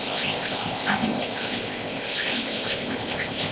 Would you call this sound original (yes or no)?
no